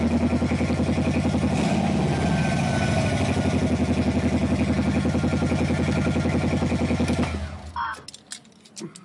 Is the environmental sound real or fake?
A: real